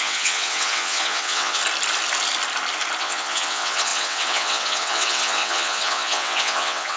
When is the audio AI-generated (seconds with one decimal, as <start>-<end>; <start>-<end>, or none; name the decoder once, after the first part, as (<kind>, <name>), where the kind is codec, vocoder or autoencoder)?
0.0-1.6 (vocoder, WaveNeXt); 3.0-7.0